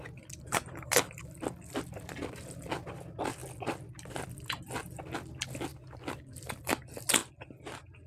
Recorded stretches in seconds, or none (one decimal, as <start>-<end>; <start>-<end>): 0.0-8.1